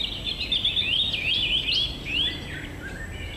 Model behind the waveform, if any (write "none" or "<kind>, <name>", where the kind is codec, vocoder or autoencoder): none